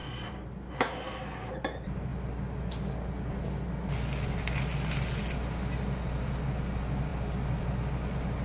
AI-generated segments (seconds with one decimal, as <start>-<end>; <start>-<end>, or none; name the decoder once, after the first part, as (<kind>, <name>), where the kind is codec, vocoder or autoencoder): 0.0-0.7 (vocoder, BigVGAN v2); 2.1-5.2